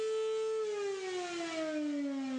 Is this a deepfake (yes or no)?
no